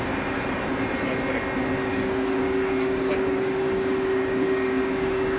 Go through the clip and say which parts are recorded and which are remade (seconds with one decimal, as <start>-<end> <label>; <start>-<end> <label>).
0.0-1.9 recorded; 1.9-5.4 remade